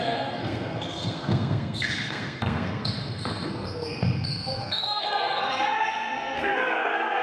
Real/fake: fake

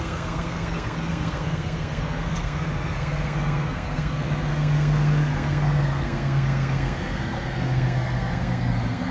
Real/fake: fake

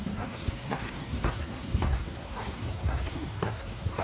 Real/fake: fake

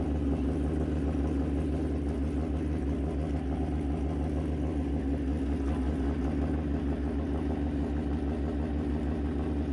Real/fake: real